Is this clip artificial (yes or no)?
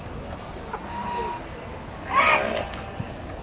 no